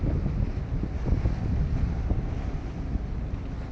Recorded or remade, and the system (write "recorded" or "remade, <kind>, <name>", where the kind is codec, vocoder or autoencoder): recorded